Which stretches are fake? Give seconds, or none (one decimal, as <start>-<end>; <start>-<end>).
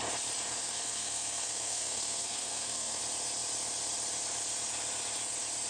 0.6-3.0